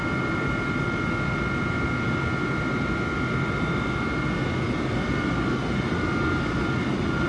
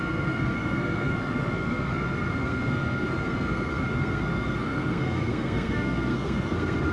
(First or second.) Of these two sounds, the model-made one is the second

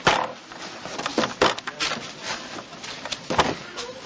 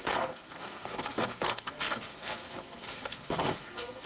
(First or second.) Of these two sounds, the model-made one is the second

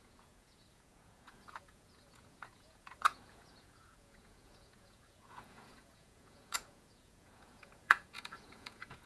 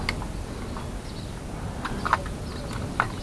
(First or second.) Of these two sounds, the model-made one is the first